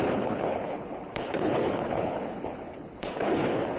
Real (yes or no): no